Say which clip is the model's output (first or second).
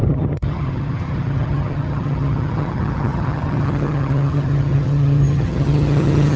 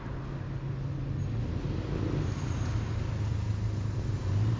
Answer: first